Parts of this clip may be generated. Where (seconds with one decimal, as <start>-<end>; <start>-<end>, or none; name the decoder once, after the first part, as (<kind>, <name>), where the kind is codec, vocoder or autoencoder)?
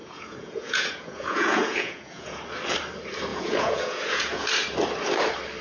0.0-2.4 (vocoder, Vocos); 3.3-4.5